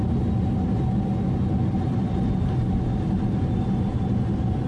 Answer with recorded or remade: recorded